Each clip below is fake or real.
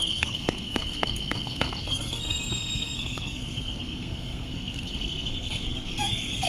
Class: fake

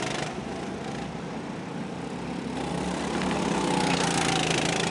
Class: real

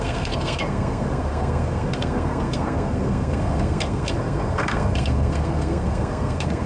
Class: fake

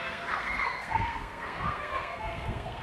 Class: fake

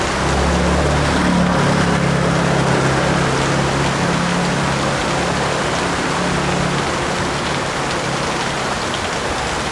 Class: real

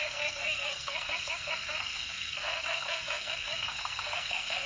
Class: fake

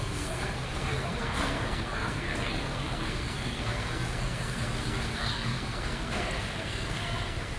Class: fake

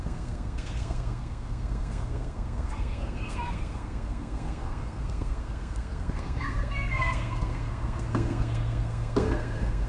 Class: fake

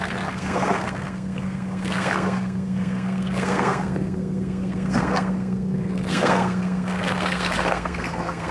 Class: fake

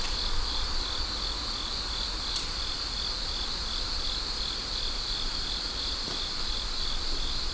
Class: real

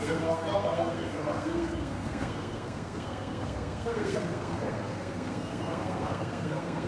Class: fake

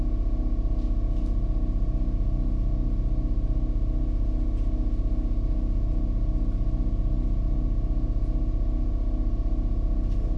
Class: real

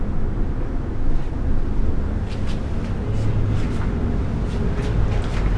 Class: real